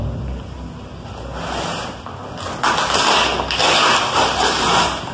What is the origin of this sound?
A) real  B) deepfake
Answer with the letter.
A